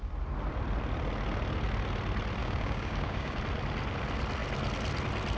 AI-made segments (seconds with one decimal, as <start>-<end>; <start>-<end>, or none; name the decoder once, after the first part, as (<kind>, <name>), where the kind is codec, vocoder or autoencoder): 2.4-3.4 (codec, DAC)